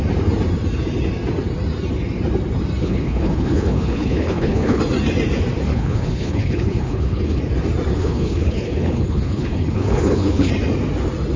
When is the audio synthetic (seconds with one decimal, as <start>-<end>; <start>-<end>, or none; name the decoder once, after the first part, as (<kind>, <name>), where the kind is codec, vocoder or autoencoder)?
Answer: 2.8-4.8 (codec, HILCodec); 5.7-7.4; 7.9-10.5